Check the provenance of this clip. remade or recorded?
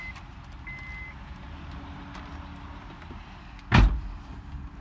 recorded